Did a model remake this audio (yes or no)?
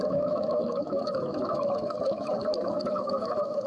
yes